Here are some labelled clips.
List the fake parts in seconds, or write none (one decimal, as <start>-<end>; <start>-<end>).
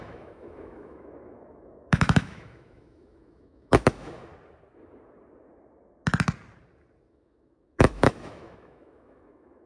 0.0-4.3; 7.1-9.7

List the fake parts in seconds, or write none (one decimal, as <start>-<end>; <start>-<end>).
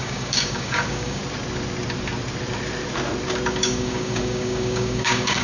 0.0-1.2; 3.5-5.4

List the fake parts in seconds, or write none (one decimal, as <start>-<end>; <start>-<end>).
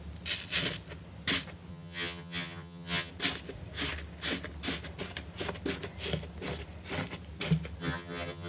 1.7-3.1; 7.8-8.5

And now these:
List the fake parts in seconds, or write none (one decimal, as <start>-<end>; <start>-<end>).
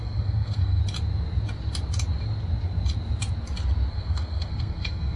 0.0-0.8; 3.9-5.2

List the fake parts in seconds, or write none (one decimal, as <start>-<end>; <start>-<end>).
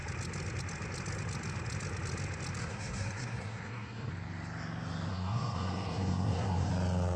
2.6-4.1; 5.1-6.7